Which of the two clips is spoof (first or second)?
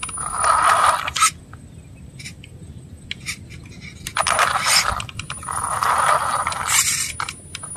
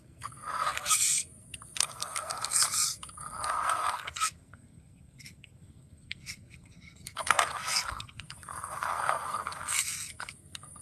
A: second